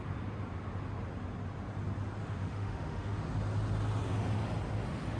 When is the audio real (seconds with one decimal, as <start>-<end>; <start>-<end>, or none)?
0.0-2.2; 3.2-5.2